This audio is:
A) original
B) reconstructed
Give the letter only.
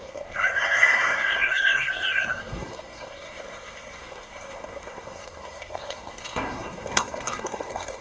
B